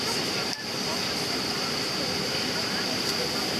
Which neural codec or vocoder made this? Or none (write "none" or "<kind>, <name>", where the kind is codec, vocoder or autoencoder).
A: vocoder, BigVGAN v2